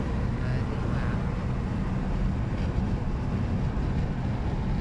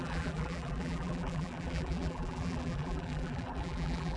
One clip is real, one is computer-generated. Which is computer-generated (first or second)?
second